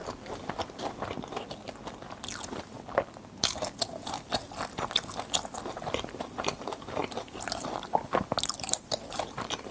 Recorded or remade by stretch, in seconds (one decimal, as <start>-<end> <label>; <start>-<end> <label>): 0.0-0.6 remade; 0.6-7.0 recorded; 7.0-9.7 remade